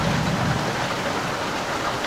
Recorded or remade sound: recorded